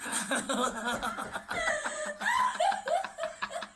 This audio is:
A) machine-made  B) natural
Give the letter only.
A